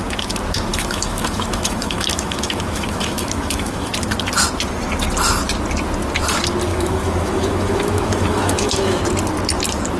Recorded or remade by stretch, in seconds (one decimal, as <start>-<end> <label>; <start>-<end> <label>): 0.0-0.7 recorded; 0.7-3.9 remade; 3.9-6.7 recorded; 6.7-9.0 remade; 9.0-10.0 recorded